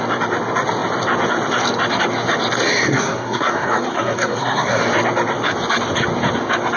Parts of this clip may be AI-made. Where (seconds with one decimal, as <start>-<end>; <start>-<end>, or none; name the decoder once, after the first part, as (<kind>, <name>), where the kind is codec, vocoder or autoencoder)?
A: 2.9-4.8 (codec, SNAC)